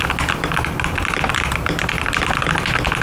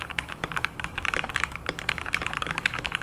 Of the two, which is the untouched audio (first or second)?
first